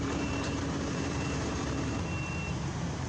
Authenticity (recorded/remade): remade